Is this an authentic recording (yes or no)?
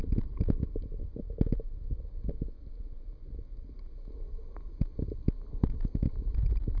yes